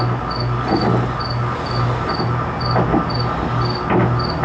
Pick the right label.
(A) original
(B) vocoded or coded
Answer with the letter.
A